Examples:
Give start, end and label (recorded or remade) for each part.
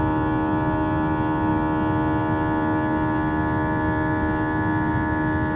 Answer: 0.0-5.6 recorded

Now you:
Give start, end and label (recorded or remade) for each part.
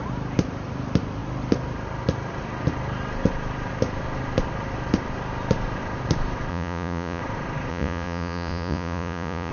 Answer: 0.0-6.5 recorded; 6.5-7.2 remade; 7.2-7.7 recorded; 7.7-9.5 remade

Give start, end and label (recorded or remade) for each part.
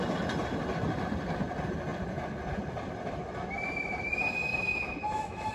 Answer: 0.0-4.5 recorded; 4.5-5.5 remade